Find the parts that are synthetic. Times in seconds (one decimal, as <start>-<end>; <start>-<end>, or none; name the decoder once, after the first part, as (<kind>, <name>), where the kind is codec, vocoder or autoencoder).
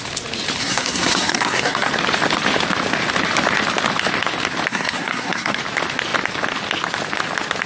0.6-1.9 (codec, SNAC); 4.7-5.6